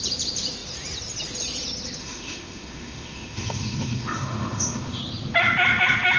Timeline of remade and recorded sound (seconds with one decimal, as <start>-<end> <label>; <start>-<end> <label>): 0.0-2.0 recorded; 2.0-5.0 remade; 5.0-6.2 recorded